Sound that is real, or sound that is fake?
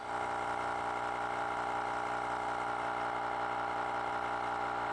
real